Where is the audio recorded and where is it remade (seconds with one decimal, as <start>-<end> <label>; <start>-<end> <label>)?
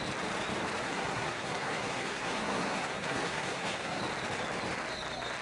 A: 0.0-0.8 recorded; 0.8-4.0 remade; 4.0-5.4 recorded